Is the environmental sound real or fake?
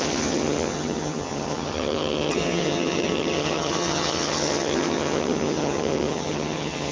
fake